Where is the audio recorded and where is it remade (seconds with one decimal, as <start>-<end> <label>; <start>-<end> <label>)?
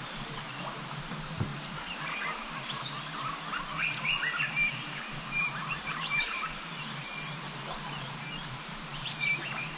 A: 0.0-1.5 remade; 1.5-5.7 recorded; 5.7-9.8 remade